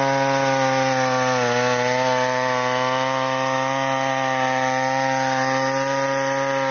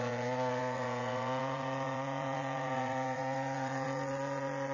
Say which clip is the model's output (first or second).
second